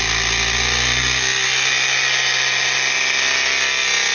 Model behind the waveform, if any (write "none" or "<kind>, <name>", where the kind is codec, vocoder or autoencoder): none